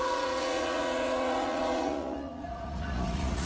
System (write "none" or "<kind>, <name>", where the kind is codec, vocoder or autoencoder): vocoder, Vocos